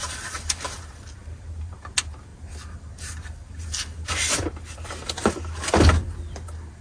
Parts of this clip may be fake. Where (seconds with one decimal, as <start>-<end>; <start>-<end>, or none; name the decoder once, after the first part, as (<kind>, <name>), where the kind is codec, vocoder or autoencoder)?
1.2-1.9 (vocoder, BigVGAN v2)